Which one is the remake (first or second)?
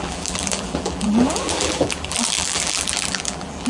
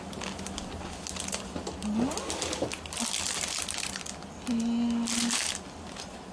first